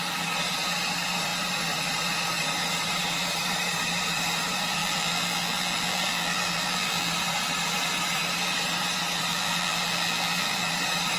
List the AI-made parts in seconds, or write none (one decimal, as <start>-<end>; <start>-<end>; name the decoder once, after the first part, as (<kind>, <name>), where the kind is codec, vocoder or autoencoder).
4.8-7.1 (vocoder, BigVGAN v2); 9.3-10.7